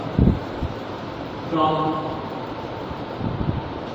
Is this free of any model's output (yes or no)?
no